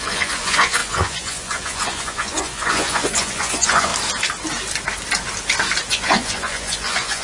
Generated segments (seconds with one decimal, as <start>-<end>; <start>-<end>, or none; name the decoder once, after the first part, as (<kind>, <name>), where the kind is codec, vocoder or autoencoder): 0.0-3.9 (vocoder, Vocos); 5.9-7.2